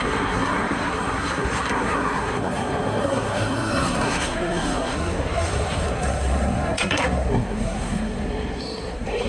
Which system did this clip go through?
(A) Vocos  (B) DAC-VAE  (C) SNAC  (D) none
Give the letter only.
C